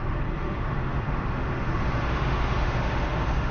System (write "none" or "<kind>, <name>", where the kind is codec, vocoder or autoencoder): autoencoder, DAC-VAE